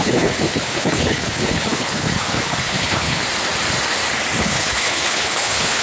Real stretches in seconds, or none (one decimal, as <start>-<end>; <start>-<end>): 3.2-4.4